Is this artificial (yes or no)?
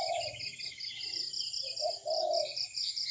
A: no